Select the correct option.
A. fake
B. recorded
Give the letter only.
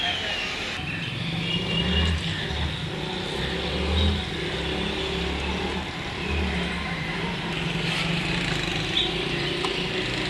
B